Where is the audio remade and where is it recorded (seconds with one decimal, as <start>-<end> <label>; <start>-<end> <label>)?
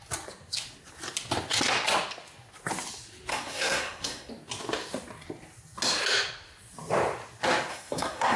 0.0-3.3 recorded; 3.3-4.3 remade; 4.3-7.7 recorded; 7.7-8.4 remade